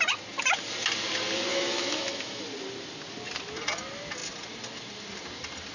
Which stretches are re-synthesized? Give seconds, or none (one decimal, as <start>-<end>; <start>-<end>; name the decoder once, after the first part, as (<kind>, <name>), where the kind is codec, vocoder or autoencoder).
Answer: 1.5-2.4 (autoencoder, DAC-VAE)